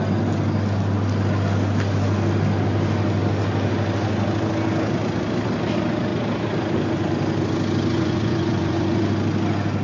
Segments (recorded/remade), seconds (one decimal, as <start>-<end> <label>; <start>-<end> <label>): 0.0-7.9 recorded; 7.9-9.0 remade; 9.0-9.8 recorded